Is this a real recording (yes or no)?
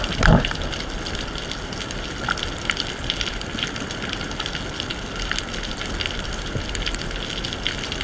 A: yes